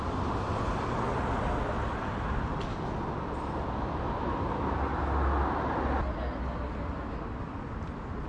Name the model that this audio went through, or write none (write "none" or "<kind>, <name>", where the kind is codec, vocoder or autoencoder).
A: none